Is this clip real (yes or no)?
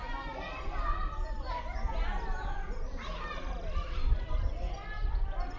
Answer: yes